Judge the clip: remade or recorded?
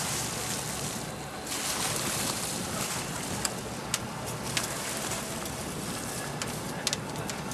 recorded